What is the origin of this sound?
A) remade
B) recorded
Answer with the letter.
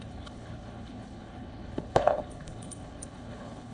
A